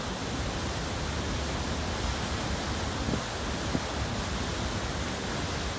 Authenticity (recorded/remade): recorded